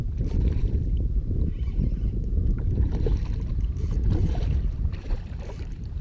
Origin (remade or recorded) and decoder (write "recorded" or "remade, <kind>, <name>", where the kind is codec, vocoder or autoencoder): remade, vocoder, BigVGAN v2